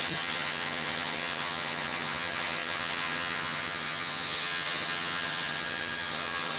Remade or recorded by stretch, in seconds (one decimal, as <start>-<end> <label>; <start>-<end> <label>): 0.0-6.6 remade